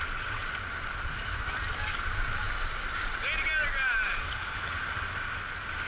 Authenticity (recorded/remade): recorded